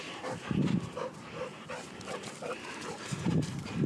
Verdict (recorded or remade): recorded